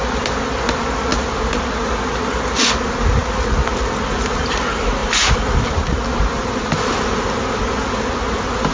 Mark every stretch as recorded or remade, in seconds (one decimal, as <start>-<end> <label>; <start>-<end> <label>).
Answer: 0.0-8.7 recorded